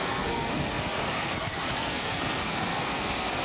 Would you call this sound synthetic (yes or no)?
yes